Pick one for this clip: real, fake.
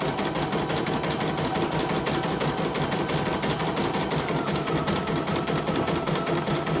real